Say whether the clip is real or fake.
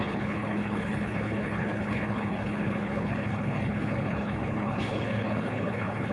fake